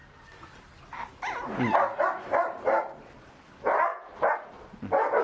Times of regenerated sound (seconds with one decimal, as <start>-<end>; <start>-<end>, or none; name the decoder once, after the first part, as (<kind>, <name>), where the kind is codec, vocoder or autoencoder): none